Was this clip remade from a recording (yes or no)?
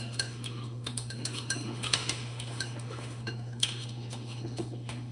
yes